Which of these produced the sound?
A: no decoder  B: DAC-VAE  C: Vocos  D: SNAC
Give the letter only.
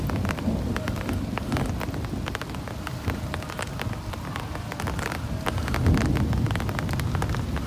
A